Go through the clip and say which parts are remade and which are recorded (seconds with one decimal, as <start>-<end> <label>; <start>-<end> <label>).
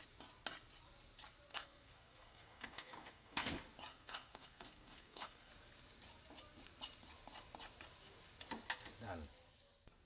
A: 0.0-1.5 recorded; 1.5-3.5 remade; 3.5-3.9 recorded; 3.9-5.5 remade; 5.5-10.1 recorded